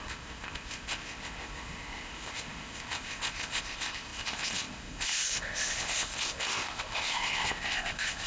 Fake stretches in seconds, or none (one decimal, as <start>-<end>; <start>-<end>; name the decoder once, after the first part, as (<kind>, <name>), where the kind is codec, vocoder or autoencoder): 0.0-8.3 (codec, ZipCodec)